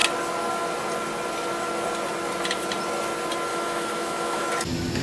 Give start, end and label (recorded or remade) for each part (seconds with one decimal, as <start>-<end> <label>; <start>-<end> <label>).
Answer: 0.0-3.5 recorded; 3.5-4.5 remade; 4.5-5.0 recorded